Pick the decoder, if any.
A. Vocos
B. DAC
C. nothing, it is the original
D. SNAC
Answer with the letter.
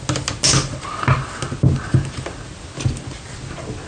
C